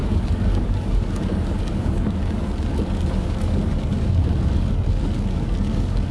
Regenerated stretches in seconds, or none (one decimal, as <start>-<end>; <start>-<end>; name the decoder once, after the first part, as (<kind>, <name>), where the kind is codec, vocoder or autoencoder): 0.0-6.1 (codec, DAC)